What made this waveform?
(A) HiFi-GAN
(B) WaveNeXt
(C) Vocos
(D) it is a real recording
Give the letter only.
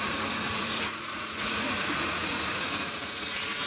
C